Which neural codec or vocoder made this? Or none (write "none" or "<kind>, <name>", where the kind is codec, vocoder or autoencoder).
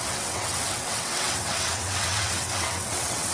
vocoder, WaveNeXt